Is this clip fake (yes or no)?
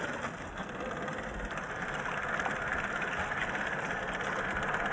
no